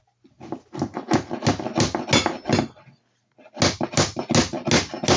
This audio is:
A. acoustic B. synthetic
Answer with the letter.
A